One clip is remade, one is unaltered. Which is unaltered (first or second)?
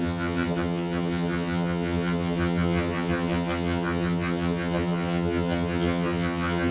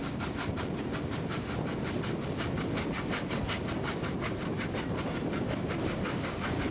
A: second